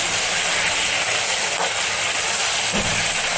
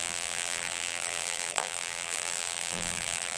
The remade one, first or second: second